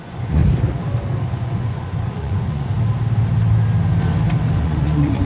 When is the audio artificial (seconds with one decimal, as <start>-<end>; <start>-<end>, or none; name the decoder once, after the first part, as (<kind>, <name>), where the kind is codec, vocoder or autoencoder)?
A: 0.0-0.4 (vocoder, Vocos); 1.3-2.7; 4.6-5.2